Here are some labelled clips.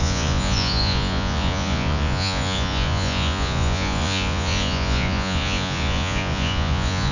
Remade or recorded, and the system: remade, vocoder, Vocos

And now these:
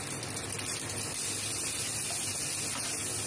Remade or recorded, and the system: recorded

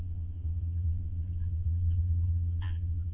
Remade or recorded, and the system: remade, vocoder, Vocos